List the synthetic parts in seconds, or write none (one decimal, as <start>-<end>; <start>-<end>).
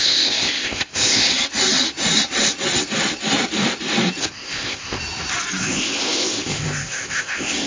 0.0-1.3; 4.2-5.0; 5.6-7.7